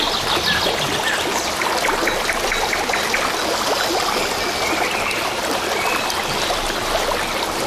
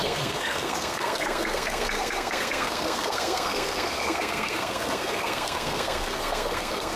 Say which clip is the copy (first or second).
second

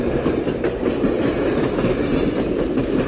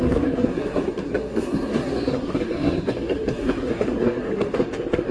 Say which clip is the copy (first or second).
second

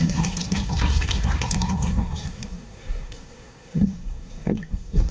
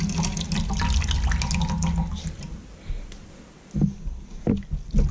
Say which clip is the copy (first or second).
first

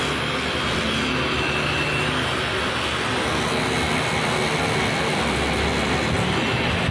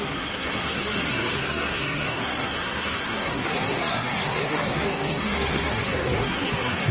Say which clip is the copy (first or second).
second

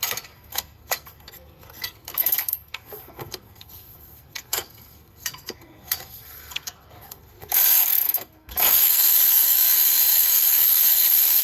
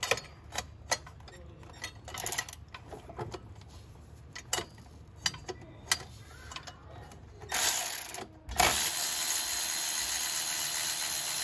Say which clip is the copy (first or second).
first